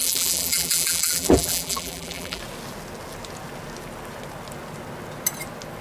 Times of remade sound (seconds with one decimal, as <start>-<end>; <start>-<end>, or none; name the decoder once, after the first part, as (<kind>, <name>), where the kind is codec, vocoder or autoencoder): 0.0-2.4 (vocoder, BigVGAN v2)